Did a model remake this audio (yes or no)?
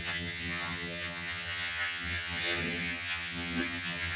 yes